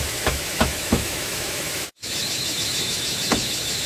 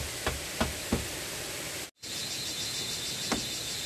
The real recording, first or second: second